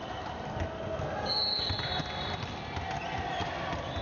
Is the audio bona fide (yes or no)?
yes